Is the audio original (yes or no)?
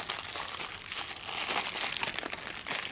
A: yes